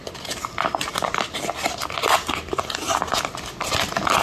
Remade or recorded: recorded